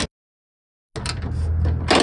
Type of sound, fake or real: real